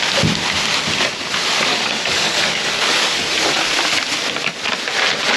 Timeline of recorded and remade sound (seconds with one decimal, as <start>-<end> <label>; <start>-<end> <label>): 0.0-1.7 recorded; 1.7-3.2 remade; 3.2-5.4 recorded